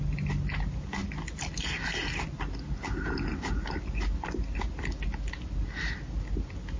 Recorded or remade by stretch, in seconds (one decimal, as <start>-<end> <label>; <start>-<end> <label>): 0.0-6.8 recorded